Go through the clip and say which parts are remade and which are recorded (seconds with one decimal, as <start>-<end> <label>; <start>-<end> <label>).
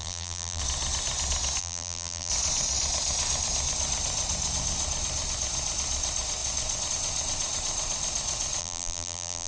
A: 0.0-0.6 remade; 0.6-1.6 recorded; 1.6-2.3 remade; 2.3-8.6 recorded; 8.6-9.5 remade